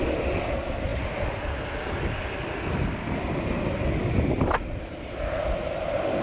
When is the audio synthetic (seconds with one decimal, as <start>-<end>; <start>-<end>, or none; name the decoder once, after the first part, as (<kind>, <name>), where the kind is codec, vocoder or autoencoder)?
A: none